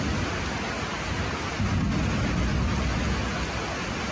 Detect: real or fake real